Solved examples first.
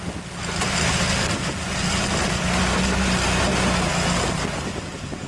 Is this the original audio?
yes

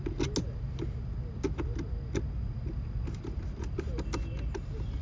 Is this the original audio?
yes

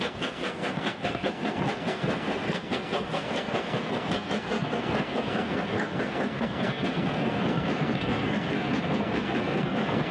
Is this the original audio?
no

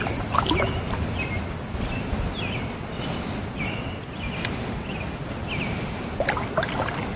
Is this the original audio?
yes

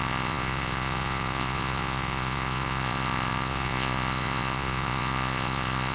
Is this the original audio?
no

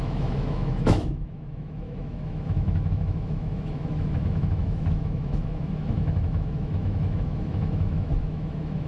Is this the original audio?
no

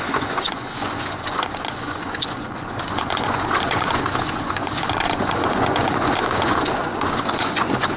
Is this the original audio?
no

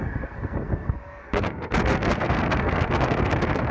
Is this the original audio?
no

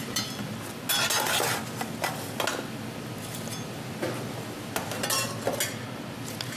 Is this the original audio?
yes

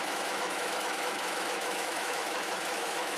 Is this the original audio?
no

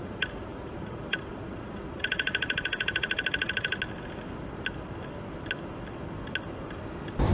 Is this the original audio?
yes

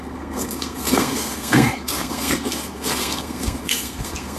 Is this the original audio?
no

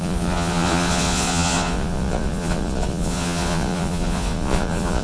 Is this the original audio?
no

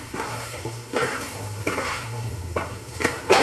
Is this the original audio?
no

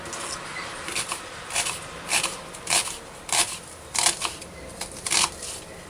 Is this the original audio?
yes